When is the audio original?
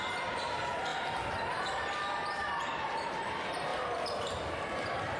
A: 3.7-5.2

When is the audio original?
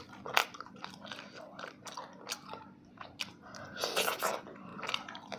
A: 0.0-0.4; 3.6-5.4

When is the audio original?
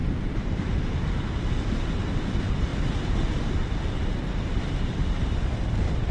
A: 1.1-2.7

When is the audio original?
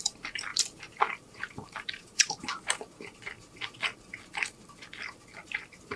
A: 0.0-0.5; 2.4-5.4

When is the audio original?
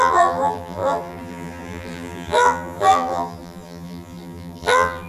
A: none